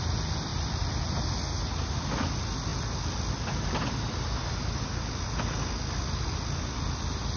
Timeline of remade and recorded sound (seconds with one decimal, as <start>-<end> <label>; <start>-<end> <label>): 0.0-7.4 recorded